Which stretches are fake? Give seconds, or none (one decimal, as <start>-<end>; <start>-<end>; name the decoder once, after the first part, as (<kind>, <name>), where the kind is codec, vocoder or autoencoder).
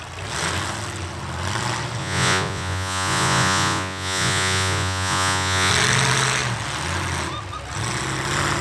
2.0-5.7 (vocoder, Vocos)